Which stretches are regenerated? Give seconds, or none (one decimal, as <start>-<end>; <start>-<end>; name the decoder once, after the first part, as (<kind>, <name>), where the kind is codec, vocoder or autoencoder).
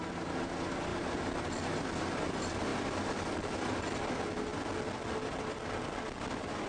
none